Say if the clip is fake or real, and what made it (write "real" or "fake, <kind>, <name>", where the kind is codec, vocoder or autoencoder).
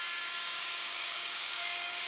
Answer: fake, codec, DAC